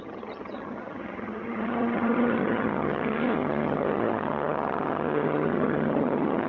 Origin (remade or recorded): remade